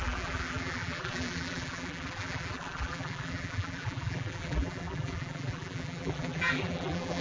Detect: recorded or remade remade